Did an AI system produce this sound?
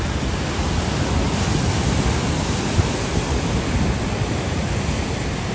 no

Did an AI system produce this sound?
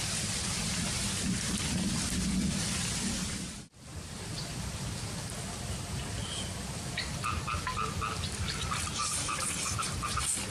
no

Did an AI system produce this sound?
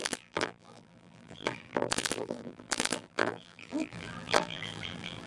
yes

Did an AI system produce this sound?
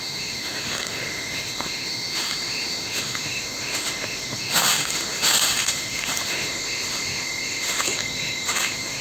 yes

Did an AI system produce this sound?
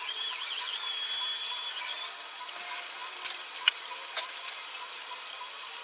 yes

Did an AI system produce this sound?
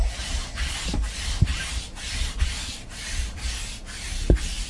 no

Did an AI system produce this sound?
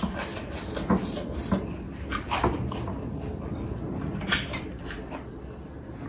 no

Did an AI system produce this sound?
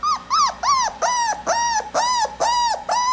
no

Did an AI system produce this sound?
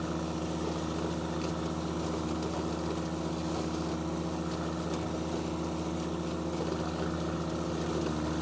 no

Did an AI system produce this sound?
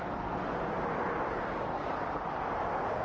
no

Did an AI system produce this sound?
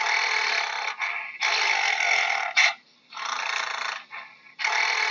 no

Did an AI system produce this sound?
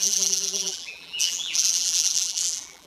yes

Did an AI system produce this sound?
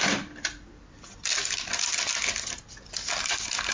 no